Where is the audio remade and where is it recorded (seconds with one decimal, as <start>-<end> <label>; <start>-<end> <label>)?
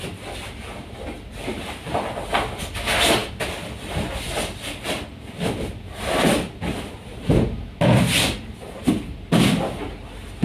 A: 0.0-10.4 recorded